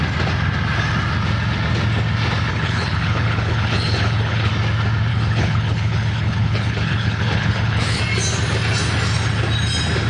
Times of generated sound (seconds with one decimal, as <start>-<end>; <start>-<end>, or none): 2.5-4.5; 5.1-8.0

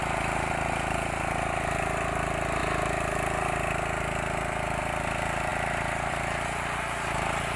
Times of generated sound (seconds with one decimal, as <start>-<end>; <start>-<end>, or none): none

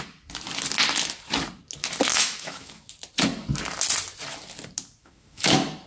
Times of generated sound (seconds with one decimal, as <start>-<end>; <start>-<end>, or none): 2.1-2.9; 5.0-5.5

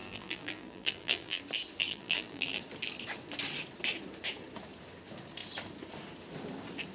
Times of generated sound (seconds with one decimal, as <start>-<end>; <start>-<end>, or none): 0.0-1.4; 1.8-2.6

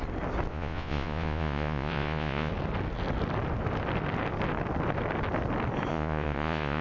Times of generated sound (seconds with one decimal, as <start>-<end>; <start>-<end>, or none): 0.5-2.5; 5.9-6.8

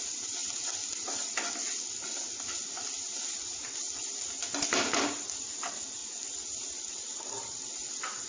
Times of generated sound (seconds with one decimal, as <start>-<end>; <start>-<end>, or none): 0.0-0.4; 5.0-8.3